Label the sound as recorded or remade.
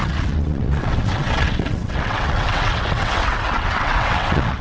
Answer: remade